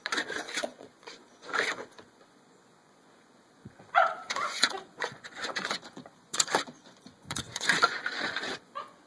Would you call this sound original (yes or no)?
no